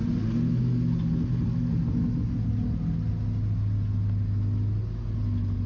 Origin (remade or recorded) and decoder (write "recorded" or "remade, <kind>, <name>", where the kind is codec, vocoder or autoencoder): recorded